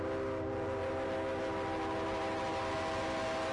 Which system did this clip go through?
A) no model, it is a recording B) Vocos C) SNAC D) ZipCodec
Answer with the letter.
A